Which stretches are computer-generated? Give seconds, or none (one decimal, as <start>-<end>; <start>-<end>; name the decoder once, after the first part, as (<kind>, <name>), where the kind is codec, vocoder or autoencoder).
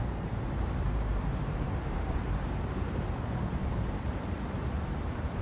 0.0-5.4 (vocoder, BigVGAN v2)